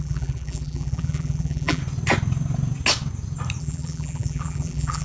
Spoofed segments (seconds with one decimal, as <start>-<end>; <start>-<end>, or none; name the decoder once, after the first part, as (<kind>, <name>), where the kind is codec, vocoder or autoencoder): 0.0-1.8 (vocoder, BigVGAN v2); 3.6-5.0